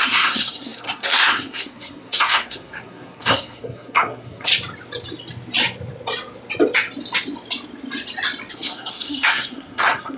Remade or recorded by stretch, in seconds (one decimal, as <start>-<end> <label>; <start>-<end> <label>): 0.0-4.5 remade; 4.5-8.5 recorded; 8.5-10.2 remade